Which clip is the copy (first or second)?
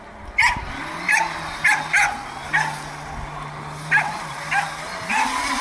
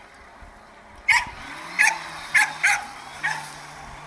second